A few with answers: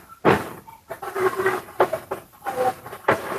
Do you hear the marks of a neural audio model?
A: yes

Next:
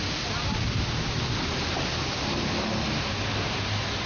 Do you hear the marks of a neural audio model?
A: no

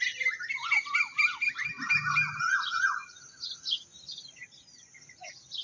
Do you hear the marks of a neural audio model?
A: no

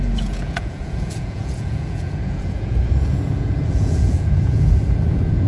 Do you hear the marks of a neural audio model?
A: yes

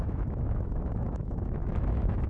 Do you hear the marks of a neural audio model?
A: yes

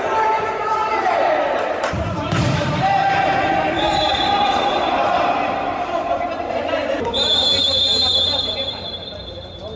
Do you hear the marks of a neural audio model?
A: yes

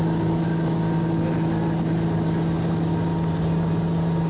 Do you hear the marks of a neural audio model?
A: no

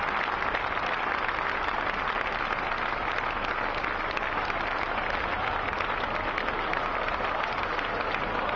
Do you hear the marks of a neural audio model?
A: no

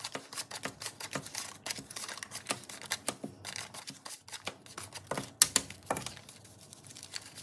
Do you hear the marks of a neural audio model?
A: no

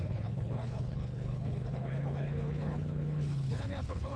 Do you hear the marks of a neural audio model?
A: yes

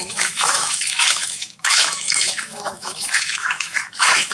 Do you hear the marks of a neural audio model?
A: yes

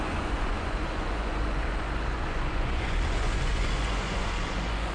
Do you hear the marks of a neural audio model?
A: yes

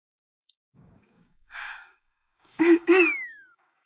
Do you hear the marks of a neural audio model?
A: yes